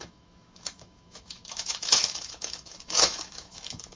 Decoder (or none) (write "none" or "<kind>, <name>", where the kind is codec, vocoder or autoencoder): autoencoder, DAC-VAE